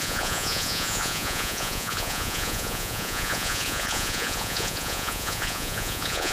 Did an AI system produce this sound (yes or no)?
yes